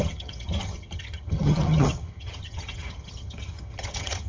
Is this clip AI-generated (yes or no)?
yes